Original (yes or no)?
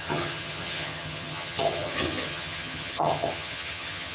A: no